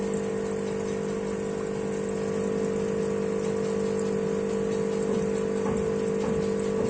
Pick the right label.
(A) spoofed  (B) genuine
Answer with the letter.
B